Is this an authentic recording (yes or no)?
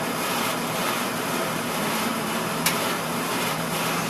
no